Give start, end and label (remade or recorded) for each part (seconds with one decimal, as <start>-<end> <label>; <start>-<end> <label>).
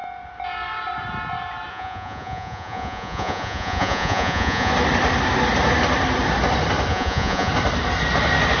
0.0-1.7 recorded; 1.7-4.7 remade; 4.7-6.9 recorded; 6.9-7.5 remade; 7.5-8.6 recorded